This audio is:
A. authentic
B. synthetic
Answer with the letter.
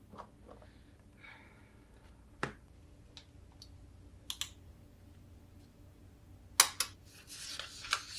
A